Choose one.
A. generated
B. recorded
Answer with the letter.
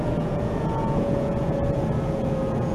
A